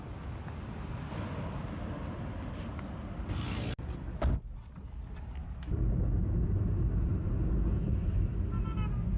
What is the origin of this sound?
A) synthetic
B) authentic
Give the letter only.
B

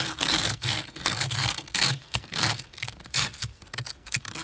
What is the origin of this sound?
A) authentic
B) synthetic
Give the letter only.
B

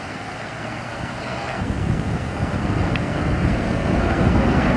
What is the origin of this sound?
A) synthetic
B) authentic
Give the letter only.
A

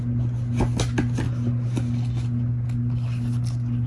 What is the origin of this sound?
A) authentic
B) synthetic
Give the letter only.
A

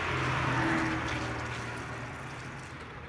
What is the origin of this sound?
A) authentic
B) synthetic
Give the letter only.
A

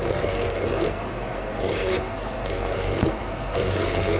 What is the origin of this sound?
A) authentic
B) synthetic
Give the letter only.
B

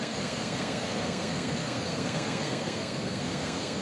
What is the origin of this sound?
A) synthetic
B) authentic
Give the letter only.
A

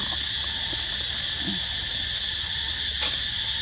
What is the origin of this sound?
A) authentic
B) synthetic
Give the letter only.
A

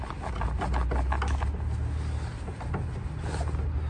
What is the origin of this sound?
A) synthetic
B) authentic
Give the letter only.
B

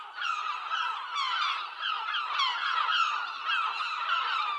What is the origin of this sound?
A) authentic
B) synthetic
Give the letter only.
A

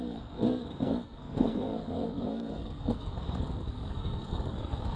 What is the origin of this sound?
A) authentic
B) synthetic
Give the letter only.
B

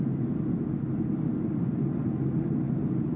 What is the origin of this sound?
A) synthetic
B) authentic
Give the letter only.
B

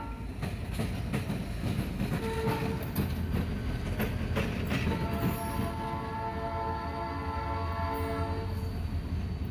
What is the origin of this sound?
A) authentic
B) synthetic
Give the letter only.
A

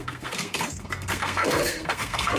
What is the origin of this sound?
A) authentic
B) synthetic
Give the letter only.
B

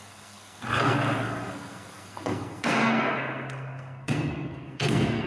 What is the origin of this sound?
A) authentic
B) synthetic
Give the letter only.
B